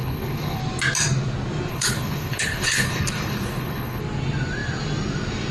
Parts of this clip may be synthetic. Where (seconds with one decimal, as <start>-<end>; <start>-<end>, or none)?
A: 0.0-0.6; 1.7-4.0